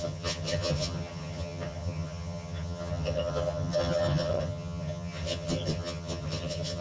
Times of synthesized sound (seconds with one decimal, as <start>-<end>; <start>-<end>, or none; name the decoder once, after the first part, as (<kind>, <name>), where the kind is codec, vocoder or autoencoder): 0.0-6.8 (vocoder, HiFi-GAN)